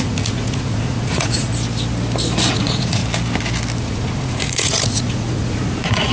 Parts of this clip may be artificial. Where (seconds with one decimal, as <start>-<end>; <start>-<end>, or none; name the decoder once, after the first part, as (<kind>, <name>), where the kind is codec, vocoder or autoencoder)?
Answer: 0.0-1.5 (vocoder, Vocos); 2.5-3.0; 3.8-6.1